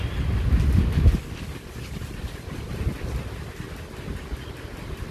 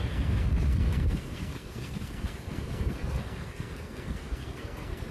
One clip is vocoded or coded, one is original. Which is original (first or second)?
first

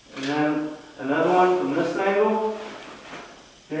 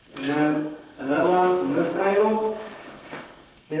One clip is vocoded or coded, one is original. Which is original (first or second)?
first